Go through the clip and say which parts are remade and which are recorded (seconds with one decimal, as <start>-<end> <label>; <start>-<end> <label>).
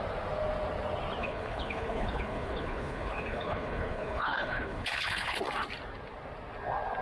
0.0-1.2 recorded; 1.2-5.4 remade; 5.4-7.0 recorded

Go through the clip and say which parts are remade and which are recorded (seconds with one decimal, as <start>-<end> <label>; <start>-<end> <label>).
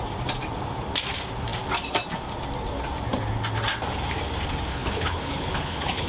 0.0-4.7 recorded; 4.7-6.1 remade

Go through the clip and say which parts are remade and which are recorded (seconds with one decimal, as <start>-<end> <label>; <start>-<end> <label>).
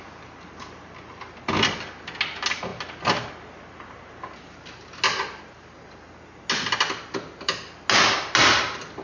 0.0-9.0 recorded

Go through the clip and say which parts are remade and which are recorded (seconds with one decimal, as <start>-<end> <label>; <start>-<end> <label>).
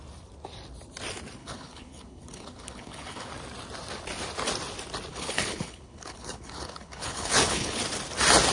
0.0-1.4 recorded; 1.4-3.3 remade; 3.3-5.1 recorded; 5.1-7.8 remade; 7.8-8.5 recorded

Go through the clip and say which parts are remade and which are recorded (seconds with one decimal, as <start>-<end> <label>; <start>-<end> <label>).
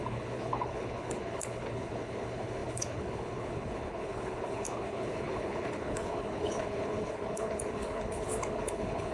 0.0-9.1 remade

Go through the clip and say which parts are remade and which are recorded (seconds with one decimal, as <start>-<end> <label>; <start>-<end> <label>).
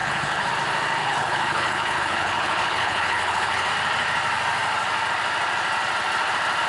0.0-0.5 remade; 0.5-1.0 recorded; 1.0-3.7 remade; 3.7-6.7 recorded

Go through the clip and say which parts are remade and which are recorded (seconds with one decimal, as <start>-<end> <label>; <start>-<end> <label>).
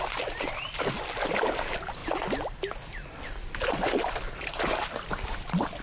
0.0-5.8 recorded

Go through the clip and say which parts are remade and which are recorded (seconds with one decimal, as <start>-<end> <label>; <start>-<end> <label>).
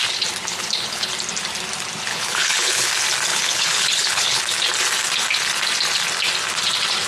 0.0-0.5 recorded; 0.5-1.1 remade; 1.1-2.1 recorded; 2.1-2.9 remade; 2.9-3.3 recorded; 3.3-4.4 remade; 4.4-7.1 recorded